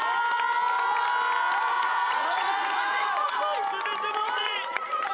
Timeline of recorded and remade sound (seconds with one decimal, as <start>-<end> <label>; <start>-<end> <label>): 0.0-1.7 recorded; 1.7-3.4 remade; 3.4-4.2 recorded; 4.2-5.1 remade